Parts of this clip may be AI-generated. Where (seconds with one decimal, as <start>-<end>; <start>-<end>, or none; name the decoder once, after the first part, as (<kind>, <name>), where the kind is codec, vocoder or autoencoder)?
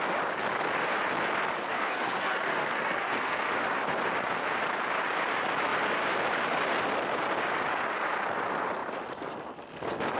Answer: 1.7-3.5 (codec, SNAC)